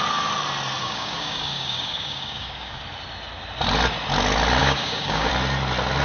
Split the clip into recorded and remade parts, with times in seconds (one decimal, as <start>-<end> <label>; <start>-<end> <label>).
0.0-0.8 recorded; 0.8-2.8 remade; 2.8-4.6 recorded; 4.6-5.3 remade; 5.3-6.0 recorded